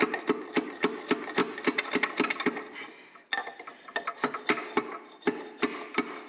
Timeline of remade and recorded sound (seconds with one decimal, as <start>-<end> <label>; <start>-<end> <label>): 0.0-6.3 recorded